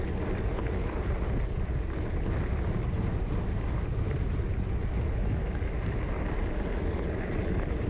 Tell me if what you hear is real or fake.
real